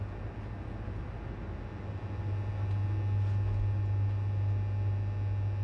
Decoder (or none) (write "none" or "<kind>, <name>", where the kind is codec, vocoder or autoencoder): none